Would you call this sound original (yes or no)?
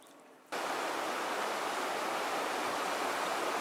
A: yes